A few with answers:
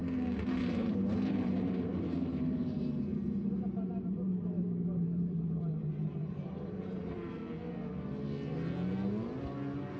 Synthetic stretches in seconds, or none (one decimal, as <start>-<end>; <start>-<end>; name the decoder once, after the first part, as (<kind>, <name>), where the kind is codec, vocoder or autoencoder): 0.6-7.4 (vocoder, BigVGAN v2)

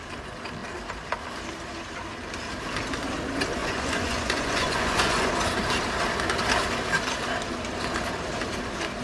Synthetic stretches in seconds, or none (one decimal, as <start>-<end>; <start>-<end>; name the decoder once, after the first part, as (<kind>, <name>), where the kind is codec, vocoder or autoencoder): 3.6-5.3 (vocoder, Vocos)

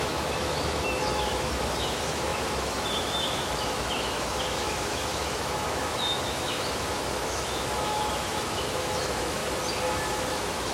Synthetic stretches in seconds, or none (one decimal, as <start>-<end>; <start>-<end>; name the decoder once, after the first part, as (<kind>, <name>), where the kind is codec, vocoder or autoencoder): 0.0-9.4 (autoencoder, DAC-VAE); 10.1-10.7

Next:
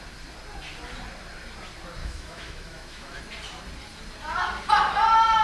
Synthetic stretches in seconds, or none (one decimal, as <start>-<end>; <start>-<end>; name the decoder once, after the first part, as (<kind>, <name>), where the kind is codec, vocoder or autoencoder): 2.0-3.2 (autoencoder, DAC-VAE)

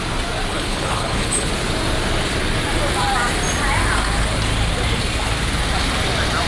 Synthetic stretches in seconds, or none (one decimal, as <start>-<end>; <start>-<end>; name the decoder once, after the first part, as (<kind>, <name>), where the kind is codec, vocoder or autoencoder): 0.5-1.5 (codec, HILCodec)

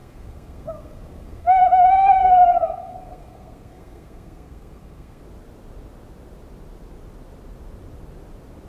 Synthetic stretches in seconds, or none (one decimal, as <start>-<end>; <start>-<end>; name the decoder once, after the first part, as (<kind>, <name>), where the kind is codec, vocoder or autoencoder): 0.0-1.6 (codec, SNAC); 2.2-5.2

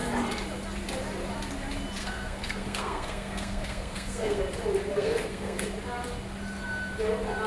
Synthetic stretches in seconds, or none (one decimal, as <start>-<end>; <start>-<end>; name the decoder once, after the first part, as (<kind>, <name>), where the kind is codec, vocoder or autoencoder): 2.0-4.4 (codec, SNAC); 4.9-5.7

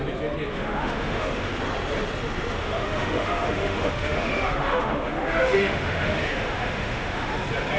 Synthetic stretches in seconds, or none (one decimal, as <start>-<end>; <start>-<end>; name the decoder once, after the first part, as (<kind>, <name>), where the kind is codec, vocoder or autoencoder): 0.5-1.5 (autoencoder, DAC-VAE); 2.6-7.3